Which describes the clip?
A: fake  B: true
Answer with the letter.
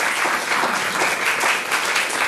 B